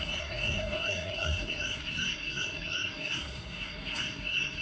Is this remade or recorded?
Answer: remade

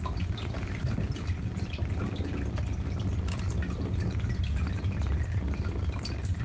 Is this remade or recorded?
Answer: recorded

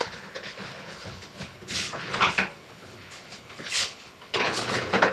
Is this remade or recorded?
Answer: remade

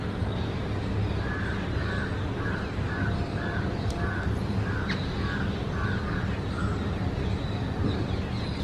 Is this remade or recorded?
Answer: recorded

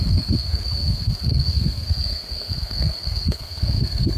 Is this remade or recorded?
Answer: remade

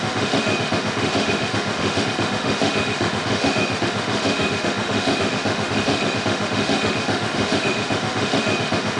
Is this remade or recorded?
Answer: remade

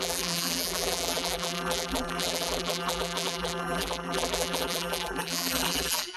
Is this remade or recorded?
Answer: remade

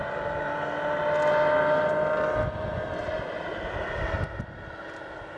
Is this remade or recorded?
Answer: recorded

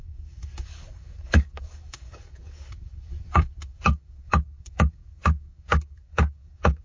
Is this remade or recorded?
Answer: remade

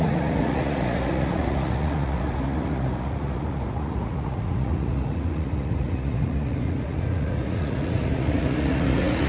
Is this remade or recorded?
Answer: remade